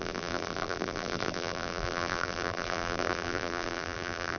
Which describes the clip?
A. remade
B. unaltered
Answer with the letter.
A